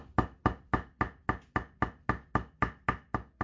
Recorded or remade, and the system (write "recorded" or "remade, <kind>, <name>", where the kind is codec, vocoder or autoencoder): recorded